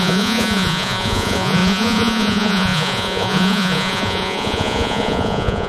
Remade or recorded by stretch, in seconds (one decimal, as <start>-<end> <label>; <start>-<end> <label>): 0.0-5.7 remade